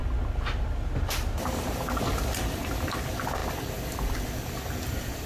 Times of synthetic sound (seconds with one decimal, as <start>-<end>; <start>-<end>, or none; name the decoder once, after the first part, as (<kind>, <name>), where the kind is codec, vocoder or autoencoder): none